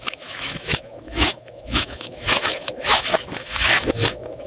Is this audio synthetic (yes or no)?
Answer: yes